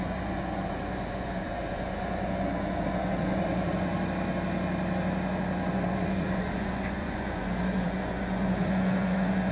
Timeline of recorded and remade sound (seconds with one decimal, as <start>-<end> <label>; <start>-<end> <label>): 0.0-3.9 remade; 3.9-5.7 recorded; 5.7-9.5 remade